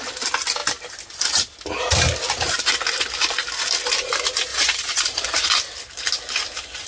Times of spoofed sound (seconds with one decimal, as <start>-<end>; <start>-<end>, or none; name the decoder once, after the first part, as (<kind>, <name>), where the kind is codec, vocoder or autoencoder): 4.5-5.5 (vocoder, BigVGAN v2)